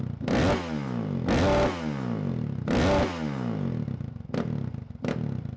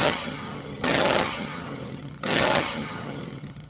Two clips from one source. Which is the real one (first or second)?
first